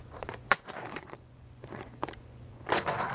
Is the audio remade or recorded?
remade